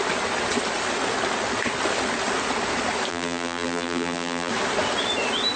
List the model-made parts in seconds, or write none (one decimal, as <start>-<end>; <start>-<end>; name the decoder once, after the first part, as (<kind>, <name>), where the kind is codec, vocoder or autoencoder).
3.1-4.5 (vocoder, BigVGAN v2)